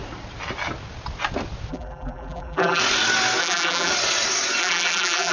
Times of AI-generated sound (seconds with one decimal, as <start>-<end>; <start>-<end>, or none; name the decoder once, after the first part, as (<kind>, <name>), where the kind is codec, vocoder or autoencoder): 1.7-2.8 (vocoder, BigVGAN v2); 3.4-3.9; 4.6-5.3